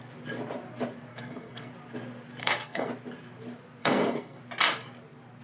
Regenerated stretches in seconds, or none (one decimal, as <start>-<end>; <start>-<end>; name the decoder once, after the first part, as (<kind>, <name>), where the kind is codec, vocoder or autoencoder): 1.1-1.7 (codec, SNAC); 2.4-2.9; 3.8-4.4